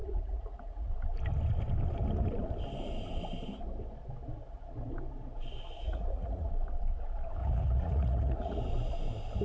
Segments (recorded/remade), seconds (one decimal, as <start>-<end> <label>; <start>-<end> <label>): 0.0-0.9 remade; 0.9-5.8 recorded; 5.8-6.5 remade; 6.5-7.4 recorded; 7.4-8.6 remade; 8.6-9.4 recorded